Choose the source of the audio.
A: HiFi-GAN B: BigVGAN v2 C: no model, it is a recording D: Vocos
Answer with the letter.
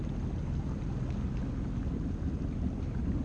C